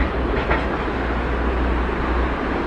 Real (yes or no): yes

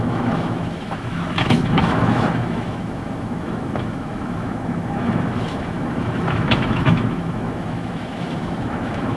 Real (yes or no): no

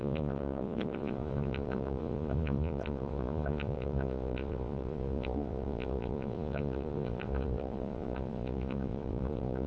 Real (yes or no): no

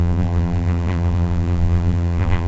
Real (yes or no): no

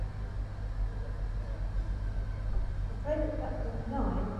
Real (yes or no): yes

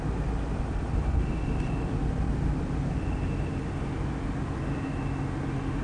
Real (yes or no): yes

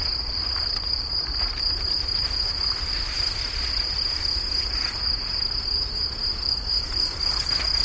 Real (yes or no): yes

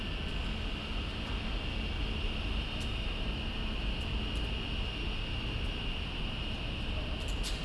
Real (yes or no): yes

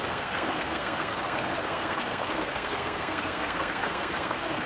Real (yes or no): no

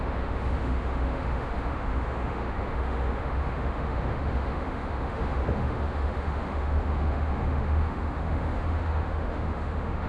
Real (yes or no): no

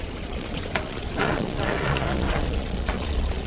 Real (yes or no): no